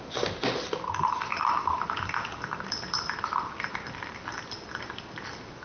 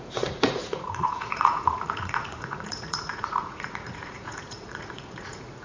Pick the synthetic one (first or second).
second